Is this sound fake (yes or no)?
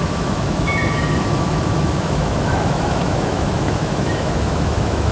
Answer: yes